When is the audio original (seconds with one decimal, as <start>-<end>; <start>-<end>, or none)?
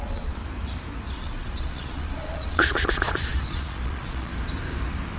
0.4-1.2; 4.3-5.2